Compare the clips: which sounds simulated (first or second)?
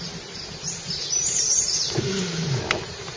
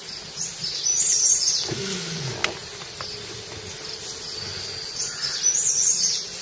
first